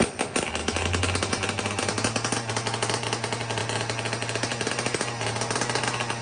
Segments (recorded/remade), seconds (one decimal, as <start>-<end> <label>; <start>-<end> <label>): 0.0-6.2 recorded